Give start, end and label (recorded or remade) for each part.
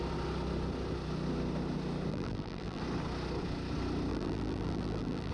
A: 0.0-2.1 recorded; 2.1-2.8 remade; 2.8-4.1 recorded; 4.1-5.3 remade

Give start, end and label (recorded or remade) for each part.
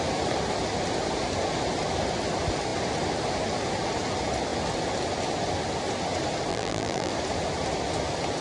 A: 0.0-6.5 recorded; 6.5-7.1 remade; 7.1-8.4 recorded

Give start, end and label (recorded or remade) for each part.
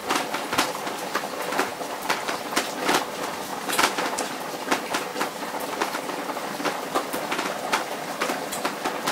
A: 0.0-0.5 remade; 0.5-3.5 recorded; 3.5-4.2 remade; 4.2-9.1 recorded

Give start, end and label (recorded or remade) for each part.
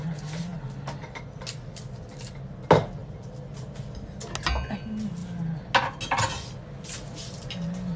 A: 0.0-3.0 recorded; 3.0-4.0 remade; 4.0-8.0 recorded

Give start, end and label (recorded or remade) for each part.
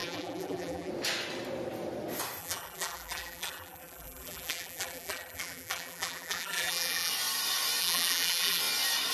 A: 0.0-0.9 remade; 0.9-2.4 recorded; 2.4-7.1 remade; 7.1-7.8 recorded; 7.8-8.6 remade; 8.6-9.1 recorded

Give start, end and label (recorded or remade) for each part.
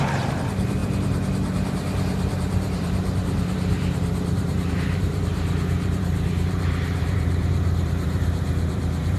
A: 0.0-9.2 remade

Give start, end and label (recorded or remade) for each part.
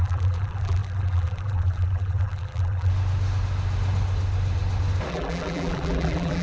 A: 0.0-2.9 remade; 2.9-5.1 recorded; 5.1-6.4 remade